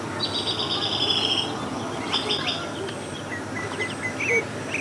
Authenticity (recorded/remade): recorded